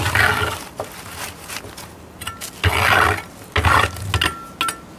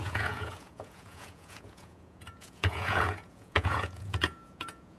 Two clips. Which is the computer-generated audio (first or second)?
second